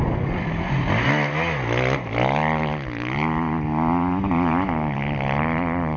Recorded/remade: recorded